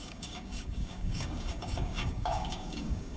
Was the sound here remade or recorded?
remade